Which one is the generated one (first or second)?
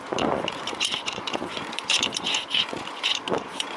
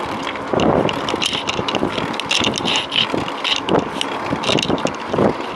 first